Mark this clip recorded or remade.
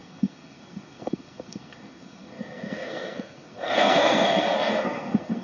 remade